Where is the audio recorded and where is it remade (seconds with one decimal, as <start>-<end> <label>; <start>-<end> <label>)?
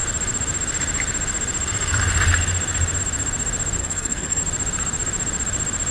0.0-3.8 recorded; 3.8-4.4 remade; 4.4-5.9 recorded